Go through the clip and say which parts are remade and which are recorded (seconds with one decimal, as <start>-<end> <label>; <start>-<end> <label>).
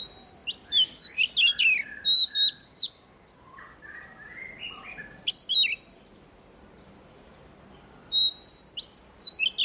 0.0-9.6 recorded